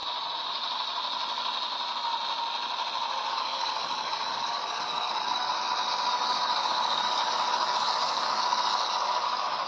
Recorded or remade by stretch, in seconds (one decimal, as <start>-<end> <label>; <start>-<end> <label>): 0.0-3.3 recorded; 3.3-5.5 remade; 5.5-6.1 recorded; 6.1-9.7 remade